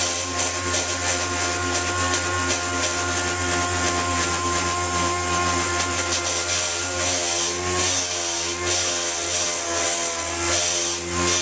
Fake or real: real